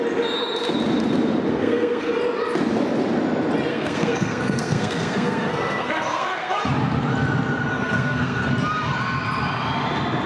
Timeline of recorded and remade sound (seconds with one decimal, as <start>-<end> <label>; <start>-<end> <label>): 0.0-1.5 recorded; 1.5-2.1 remade; 2.1-3.7 recorded; 3.7-6.6 remade; 6.6-7.7 recorded; 7.7-8.5 remade; 8.5-10.3 recorded